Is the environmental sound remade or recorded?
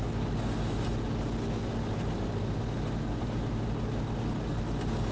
recorded